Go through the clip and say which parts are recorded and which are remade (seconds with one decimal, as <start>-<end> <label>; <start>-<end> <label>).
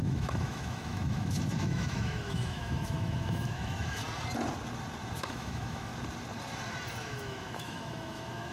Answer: 0.0-4.0 remade; 4.0-5.2 recorded; 5.2-5.9 remade; 5.9-7.0 recorded; 7.0-8.5 remade